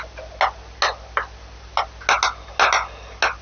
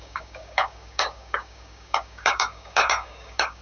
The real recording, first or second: first